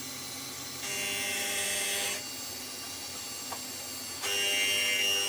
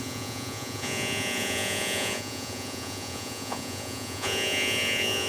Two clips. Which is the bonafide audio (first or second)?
first